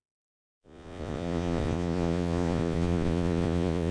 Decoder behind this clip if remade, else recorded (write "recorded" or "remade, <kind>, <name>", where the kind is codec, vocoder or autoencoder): remade, vocoder, Vocos